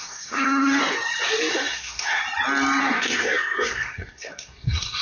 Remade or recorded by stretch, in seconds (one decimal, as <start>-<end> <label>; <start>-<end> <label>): 0.0-0.8 remade; 0.8-1.5 recorded; 1.5-2.2 remade; 2.2-2.8 recorded; 2.8-5.0 remade